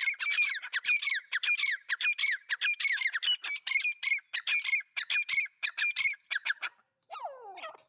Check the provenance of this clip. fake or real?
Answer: real